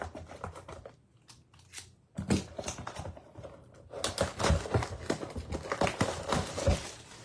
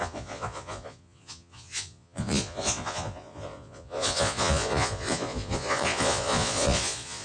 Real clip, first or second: first